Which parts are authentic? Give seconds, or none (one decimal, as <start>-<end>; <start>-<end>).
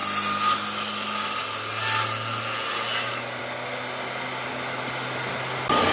0.0-5.9